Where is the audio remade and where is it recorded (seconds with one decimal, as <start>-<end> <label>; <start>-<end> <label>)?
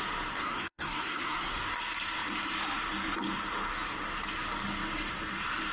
0.0-0.4 recorded; 0.4-1.6 remade; 1.6-5.7 recorded